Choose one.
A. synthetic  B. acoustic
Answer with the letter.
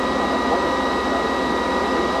B